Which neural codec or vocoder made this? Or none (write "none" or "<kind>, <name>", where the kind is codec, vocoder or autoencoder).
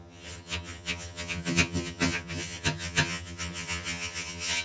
vocoder, HiFi-GAN